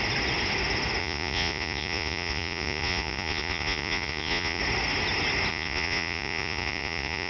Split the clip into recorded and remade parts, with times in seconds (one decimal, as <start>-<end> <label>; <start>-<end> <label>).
0.0-1.0 recorded; 1.0-4.6 remade; 4.6-5.5 recorded; 5.5-7.3 remade